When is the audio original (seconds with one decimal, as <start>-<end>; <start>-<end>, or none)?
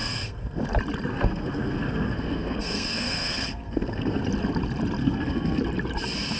0.6-1.1; 4.2-5.0; 5.6-6.4